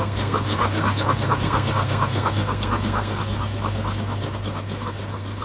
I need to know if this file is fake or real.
fake